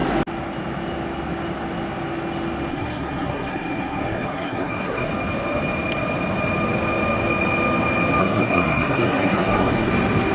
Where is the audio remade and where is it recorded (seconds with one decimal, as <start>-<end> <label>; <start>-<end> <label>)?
0.0-2.7 recorded; 2.7-5.1 remade; 5.1-8.2 recorded; 8.2-9.9 remade; 9.9-10.3 recorded